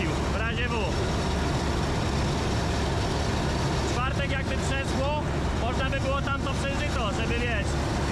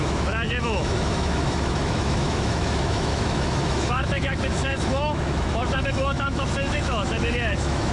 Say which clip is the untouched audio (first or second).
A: first